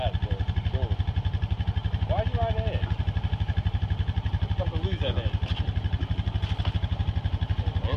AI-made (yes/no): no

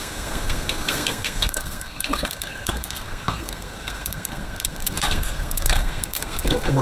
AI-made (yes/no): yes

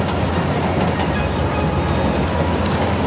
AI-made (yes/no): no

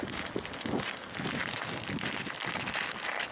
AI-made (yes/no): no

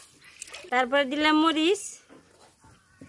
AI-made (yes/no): no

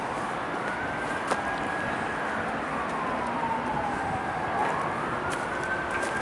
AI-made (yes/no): no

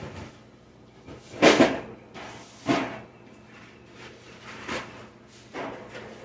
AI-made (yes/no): no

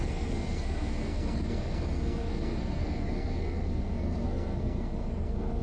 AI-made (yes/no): yes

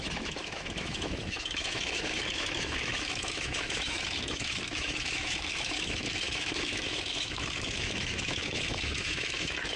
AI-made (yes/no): yes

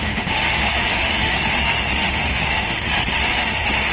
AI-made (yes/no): yes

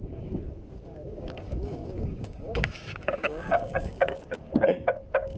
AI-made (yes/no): yes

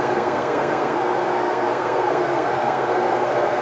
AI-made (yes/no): yes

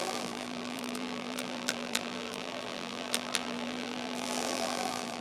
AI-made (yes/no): yes